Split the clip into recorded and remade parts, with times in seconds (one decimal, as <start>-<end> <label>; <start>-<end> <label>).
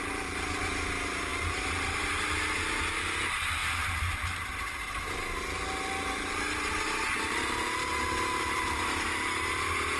0.0-10.0 recorded